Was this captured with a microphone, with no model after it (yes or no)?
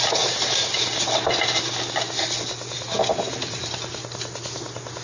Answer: yes